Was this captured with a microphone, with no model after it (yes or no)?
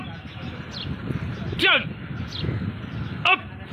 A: yes